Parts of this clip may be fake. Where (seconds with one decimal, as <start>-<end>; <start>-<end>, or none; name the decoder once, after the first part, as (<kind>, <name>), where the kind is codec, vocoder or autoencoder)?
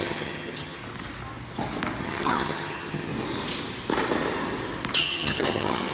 0.0-0.8 (vocoder, HiFi-GAN); 2.0-3.1; 5.0-5.9